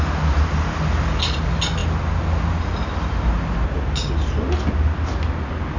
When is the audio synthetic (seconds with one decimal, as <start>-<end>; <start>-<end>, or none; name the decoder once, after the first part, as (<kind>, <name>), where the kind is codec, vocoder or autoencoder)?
none